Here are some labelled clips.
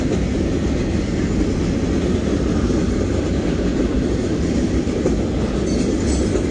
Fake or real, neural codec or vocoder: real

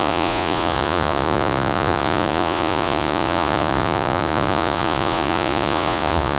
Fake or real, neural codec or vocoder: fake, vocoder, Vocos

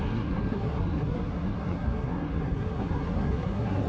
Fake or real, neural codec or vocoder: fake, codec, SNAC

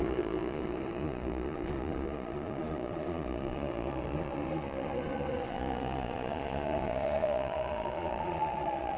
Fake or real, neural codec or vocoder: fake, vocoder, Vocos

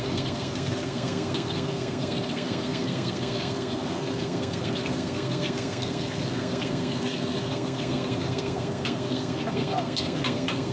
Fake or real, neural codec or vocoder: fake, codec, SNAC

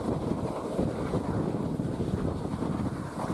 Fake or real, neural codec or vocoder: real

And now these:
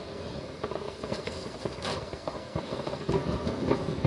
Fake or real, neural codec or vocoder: fake, codec, SNAC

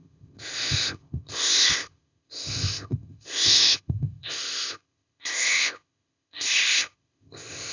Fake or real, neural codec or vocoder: fake, codec, ZipCodec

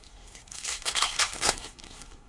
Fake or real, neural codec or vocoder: fake, codec, SNAC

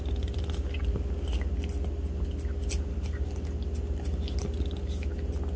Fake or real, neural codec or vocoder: real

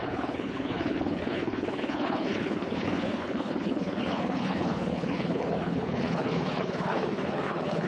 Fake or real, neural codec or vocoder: fake, codec, HILCodec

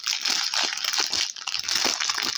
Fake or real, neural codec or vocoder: real